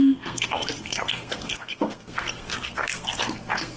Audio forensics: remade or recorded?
remade